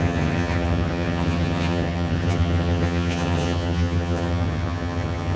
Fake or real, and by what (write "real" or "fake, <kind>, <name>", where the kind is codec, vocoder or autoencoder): fake, vocoder, HiFi-GAN